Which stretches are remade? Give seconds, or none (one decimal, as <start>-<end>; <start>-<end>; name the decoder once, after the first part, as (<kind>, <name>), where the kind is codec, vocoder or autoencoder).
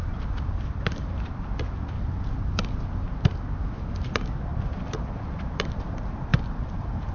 0.0-1.3 (vocoder, BigVGAN v2); 4.5-5.6; 6.3-7.1